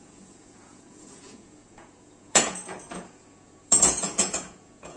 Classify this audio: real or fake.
fake